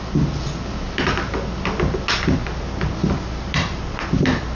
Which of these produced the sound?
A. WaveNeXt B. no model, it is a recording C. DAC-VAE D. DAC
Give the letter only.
B